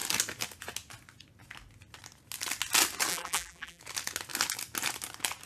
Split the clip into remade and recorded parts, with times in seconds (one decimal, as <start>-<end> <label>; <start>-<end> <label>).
0.0-3.1 recorded; 3.1-3.8 remade; 3.8-5.5 recorded